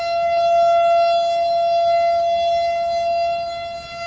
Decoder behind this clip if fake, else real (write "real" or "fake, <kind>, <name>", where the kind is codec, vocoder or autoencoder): real